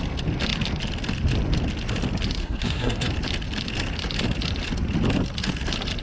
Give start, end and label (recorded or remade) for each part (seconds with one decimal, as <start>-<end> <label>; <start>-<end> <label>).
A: 0.0-2.4 recorded; 2.4-3.1 remade; 3.1-6.0 recorded